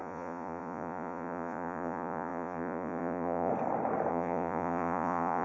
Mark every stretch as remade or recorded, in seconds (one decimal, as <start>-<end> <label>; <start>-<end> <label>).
0.0-3.5 remade; 3.5-4.1 recorded; 4.1-5.4 remade